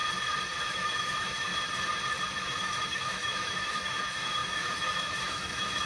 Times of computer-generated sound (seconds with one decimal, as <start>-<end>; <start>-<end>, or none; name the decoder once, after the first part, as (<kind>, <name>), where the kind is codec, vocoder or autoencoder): 0.6-1.5 (autoencoder, DAC-VAE); 2.4-5.9